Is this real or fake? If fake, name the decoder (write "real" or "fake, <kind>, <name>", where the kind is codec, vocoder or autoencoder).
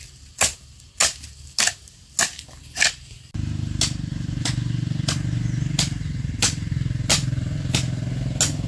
real